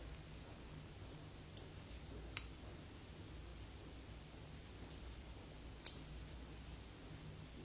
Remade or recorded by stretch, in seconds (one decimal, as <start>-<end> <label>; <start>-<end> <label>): 0.0-7.6 recorded